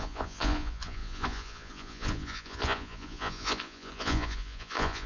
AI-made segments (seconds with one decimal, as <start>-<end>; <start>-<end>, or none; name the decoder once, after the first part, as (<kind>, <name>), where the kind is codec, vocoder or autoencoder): 0.0-5.1 (vocoder, Vocos)